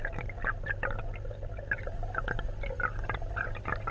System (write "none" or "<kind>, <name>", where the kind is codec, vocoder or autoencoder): none